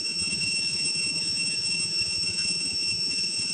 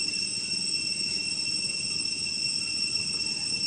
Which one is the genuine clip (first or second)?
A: second